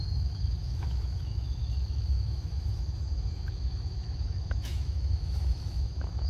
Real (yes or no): no